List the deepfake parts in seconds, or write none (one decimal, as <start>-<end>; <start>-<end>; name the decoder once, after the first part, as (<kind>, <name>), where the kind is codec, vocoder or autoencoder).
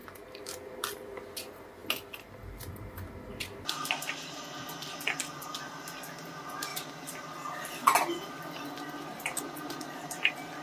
none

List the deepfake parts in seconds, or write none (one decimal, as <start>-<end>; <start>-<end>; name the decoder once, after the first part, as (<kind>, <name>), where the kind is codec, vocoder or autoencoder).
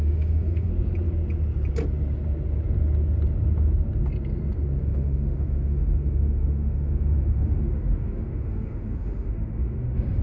0.0-0.7 (autoencoder, DAC-VAE); 4.8-10.2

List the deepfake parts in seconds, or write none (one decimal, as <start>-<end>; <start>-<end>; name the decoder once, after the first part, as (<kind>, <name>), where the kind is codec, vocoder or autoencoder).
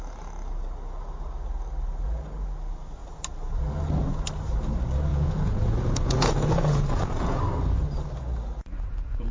5.1-7.4 (vocoder, Vocos)